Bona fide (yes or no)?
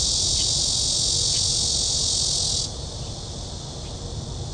yes